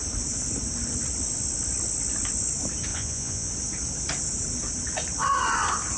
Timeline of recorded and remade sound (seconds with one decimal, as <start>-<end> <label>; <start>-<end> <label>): 0.0-2.9 recorded; 2.9-3.5 remade; 3.5-6.0 recorded